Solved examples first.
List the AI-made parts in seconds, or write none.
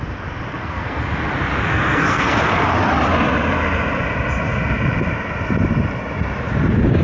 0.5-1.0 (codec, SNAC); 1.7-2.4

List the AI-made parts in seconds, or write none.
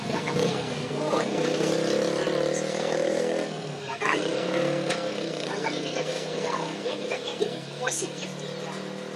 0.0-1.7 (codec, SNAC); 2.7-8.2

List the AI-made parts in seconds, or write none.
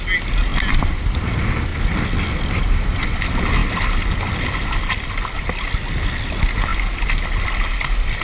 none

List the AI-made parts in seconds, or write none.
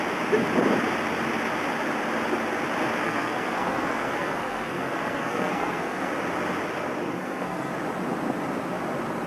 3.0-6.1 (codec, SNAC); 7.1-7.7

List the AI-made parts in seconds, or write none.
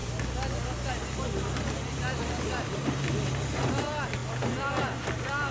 none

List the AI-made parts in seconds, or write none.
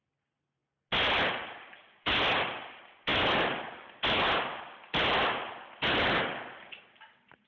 none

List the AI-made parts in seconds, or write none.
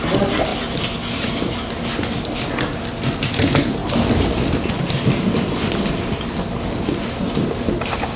none